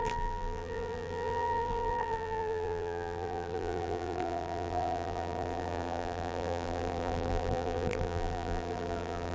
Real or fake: fake